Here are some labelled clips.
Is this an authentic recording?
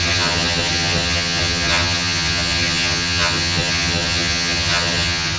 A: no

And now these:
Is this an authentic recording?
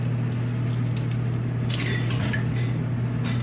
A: yes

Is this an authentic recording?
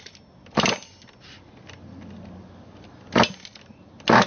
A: yes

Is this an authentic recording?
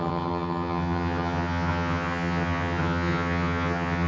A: no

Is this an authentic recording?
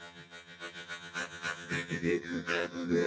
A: no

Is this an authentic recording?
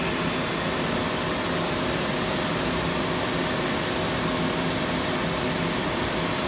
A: yes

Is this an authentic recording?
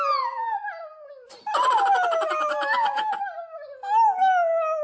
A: yes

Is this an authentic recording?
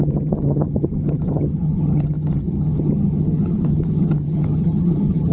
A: no